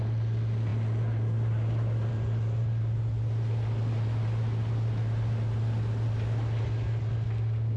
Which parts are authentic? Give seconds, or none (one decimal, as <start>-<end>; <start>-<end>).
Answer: 0.0-7.8